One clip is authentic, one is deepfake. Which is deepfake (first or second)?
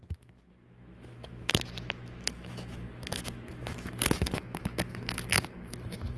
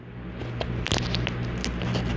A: first